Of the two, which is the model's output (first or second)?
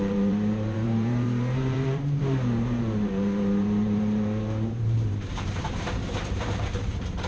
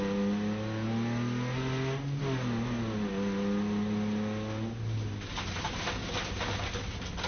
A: first